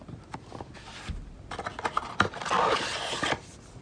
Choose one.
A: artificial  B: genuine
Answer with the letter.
B